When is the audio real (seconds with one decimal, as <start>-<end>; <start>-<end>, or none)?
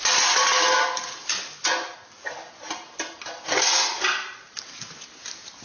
0.0-5.6